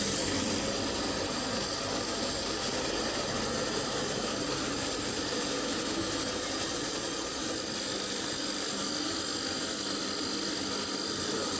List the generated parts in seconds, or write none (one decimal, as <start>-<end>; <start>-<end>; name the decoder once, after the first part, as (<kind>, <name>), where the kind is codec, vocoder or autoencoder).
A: 6.7-7.4 (vocoder, Vocos)